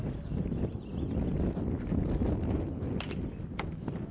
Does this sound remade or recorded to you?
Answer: recorded